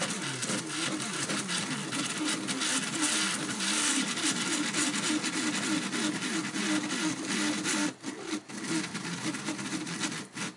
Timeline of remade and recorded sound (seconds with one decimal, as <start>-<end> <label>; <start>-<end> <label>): 0.0-10.6 recorded